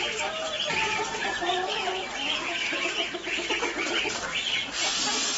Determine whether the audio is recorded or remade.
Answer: recorded